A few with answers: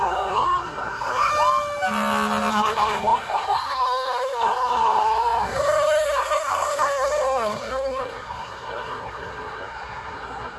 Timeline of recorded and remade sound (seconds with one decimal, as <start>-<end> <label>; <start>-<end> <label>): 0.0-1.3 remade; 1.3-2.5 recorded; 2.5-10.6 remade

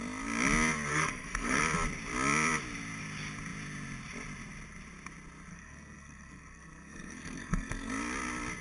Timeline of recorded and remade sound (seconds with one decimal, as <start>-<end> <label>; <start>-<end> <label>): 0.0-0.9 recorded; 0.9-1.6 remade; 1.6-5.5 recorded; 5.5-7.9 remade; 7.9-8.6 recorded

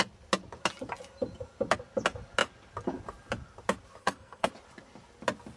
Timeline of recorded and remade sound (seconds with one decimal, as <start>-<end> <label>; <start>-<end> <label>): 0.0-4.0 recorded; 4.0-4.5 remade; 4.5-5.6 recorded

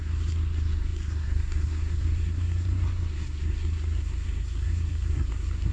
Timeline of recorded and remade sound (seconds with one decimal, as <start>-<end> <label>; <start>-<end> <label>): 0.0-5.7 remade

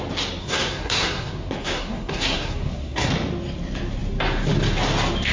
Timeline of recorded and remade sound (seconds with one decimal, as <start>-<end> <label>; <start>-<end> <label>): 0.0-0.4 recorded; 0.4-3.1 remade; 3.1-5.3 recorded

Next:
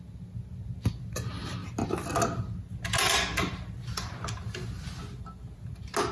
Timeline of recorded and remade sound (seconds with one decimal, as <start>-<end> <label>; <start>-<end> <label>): 0.0-6.1 recorded